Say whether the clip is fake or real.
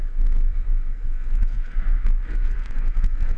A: fake